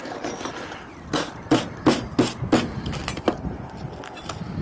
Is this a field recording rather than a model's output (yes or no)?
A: yes